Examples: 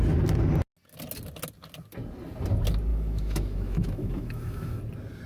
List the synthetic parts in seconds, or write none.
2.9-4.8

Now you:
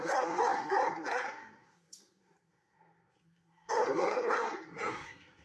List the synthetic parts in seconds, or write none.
0.0-5.4

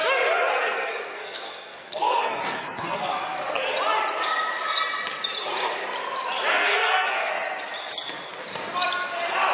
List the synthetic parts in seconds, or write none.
0.6-3.2; 6.5-7.3